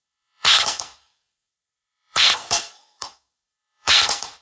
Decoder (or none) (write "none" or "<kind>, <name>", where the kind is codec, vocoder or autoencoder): codec, SNAC